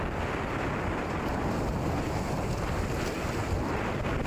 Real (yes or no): yes